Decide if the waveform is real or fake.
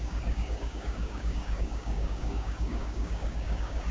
fake